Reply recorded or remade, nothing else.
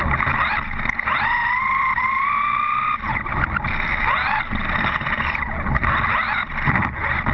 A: recorded